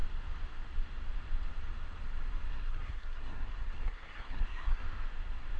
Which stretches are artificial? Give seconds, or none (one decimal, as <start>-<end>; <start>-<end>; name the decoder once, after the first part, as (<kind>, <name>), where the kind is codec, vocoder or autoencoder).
2.5-4.8 (codec, SNAC)